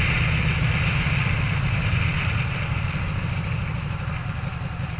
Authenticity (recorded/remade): recorded